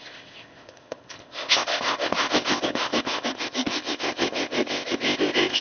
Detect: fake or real fake